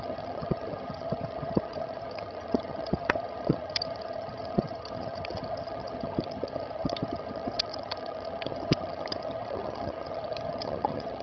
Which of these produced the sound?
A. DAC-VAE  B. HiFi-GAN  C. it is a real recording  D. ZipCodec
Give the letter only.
B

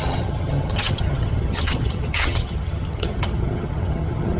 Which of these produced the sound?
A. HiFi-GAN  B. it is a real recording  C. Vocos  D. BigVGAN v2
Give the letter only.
A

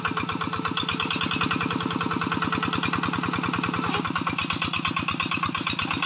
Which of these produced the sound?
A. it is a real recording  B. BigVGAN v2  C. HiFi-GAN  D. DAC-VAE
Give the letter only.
A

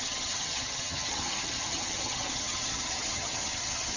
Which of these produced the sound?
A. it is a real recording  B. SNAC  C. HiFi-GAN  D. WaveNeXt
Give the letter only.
C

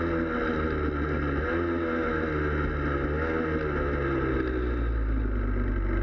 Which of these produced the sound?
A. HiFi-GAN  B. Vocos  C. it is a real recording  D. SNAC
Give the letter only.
C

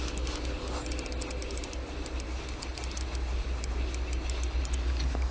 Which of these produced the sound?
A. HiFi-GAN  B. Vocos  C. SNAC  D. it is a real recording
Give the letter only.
D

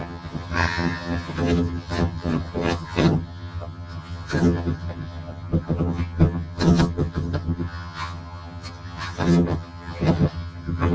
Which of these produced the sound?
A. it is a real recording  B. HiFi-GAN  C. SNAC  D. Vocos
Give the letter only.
B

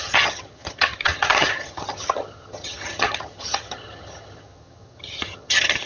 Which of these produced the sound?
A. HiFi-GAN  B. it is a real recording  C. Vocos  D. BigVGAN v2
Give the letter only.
A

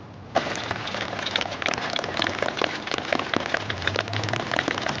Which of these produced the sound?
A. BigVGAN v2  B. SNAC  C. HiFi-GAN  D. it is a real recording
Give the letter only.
D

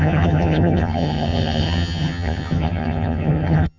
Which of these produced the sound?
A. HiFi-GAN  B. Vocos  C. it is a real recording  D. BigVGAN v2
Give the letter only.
A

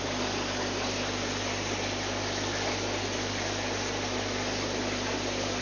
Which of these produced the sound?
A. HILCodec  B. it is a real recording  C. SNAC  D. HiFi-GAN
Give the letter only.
B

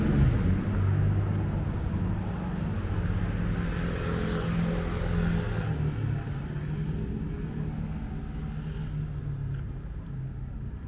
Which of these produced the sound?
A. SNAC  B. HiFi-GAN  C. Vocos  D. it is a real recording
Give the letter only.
D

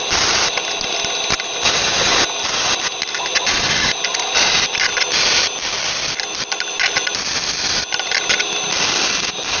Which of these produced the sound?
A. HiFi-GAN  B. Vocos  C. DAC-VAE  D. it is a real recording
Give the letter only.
D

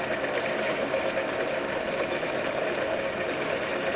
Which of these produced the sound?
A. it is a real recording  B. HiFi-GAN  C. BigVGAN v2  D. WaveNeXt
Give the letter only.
A